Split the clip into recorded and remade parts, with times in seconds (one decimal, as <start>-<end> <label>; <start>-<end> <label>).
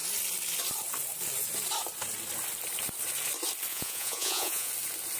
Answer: 0.0-3.7 recorded; 3.7-4.7 remade; 4.7-5.2 recorded